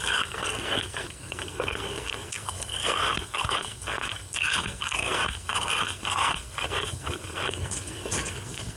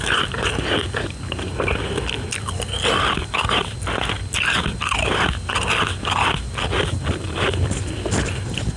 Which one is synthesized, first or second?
first